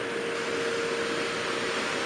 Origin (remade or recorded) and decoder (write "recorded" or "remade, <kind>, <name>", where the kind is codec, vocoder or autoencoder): recorded